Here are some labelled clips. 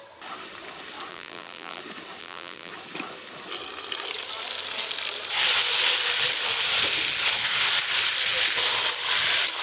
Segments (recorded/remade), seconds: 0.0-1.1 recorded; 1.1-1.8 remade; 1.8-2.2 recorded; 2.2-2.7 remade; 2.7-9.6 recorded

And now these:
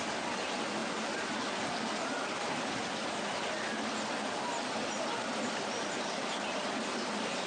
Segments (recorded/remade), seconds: 0.0-7.5 recorded

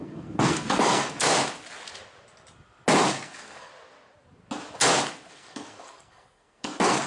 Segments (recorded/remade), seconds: 0.0-1.3 remade; 1.3-3.1 recorded; 3.1-3.7 remade; 3.7-5.3 recorded; 5.3-7.1 remade

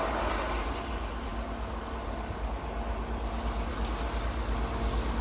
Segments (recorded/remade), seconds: 0.0-5.2 recorded

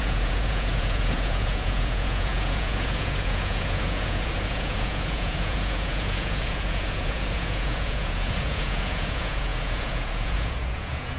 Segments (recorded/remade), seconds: 0.0-11.2 remade

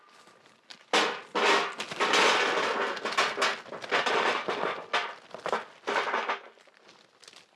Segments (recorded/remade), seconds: 0.0-7.6 recorded